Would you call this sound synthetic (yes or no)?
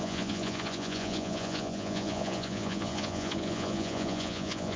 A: yes